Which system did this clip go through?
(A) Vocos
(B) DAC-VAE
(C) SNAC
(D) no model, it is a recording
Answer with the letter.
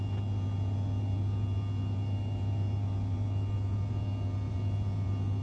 D